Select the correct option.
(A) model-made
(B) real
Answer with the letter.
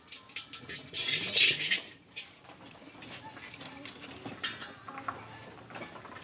B